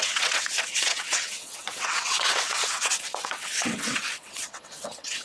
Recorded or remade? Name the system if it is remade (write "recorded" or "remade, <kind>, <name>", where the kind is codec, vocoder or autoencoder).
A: remade, vocoder, WaveNeXt